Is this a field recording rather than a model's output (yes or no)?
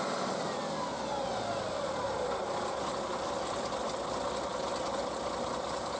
yes